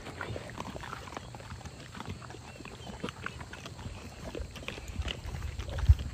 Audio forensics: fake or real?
fake